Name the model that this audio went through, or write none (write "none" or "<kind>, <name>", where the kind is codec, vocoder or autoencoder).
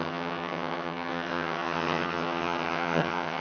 vocoder, HiFi-GAN